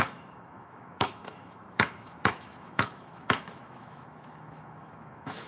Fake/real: fake